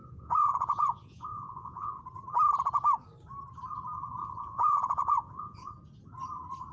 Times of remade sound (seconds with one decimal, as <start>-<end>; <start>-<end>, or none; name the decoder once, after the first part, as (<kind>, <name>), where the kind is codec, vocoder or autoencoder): 0.0-2.0 (vocoder, Vocos); 4.2-5.7